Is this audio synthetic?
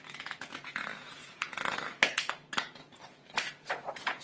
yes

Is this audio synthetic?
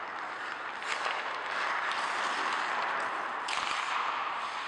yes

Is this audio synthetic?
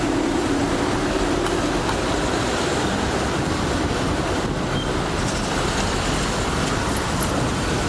yes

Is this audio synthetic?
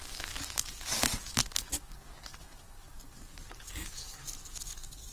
yes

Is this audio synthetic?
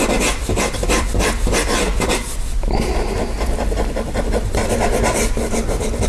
yes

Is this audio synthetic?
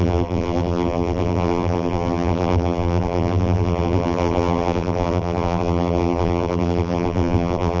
yes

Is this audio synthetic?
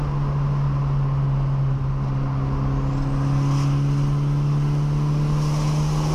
no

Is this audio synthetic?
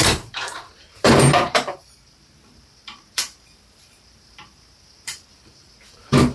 yes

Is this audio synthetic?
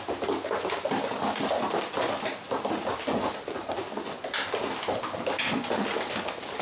no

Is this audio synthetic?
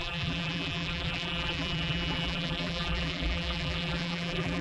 yes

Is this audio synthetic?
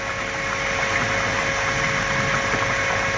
no